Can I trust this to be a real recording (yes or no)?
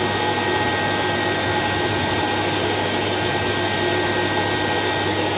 yes